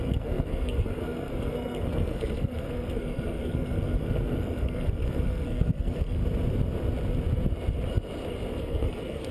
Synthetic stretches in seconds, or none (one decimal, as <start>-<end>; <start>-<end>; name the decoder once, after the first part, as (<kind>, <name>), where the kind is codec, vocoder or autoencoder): 0.0-6.2 (codec, SNAC); 8.6-9.3